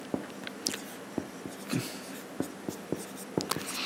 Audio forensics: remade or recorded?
recorded